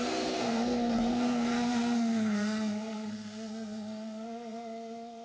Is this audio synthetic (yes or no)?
yes